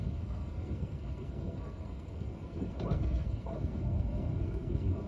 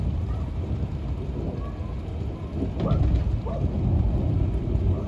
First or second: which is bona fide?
second